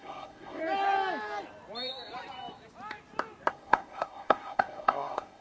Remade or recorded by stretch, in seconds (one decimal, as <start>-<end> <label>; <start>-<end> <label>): 0.0-0.6 remade; 0.6-3.5 recorded; 3.5-5.4 remade